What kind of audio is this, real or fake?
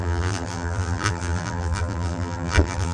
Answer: fake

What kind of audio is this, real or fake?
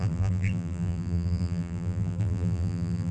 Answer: fake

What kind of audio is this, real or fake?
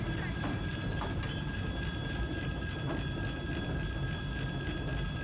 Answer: real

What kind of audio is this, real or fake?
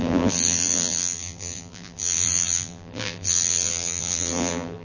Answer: fake